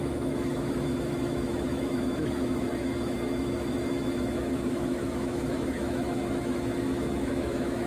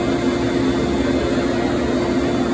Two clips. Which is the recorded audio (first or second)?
second